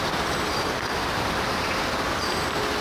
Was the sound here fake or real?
real